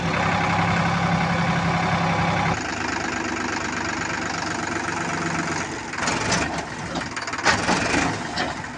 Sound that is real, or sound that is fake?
real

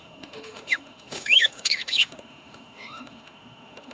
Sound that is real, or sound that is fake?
fake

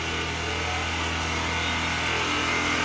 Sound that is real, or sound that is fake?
real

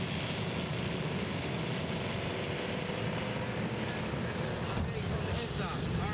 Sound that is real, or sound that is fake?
real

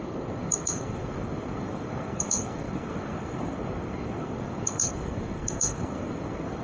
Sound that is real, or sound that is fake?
fake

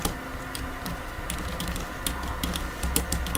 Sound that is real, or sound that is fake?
real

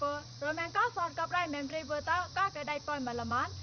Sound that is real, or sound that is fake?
fake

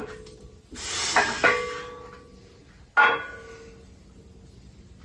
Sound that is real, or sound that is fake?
real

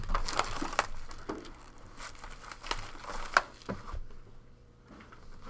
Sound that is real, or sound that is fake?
real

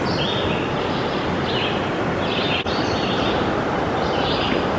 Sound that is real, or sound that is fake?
real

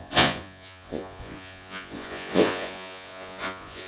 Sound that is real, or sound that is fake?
fake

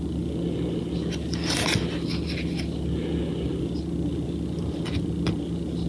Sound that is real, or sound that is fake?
real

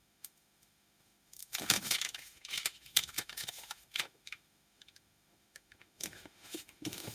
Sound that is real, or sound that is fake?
fake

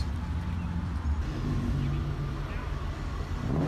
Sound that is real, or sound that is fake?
real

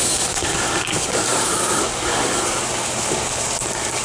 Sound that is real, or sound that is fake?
fake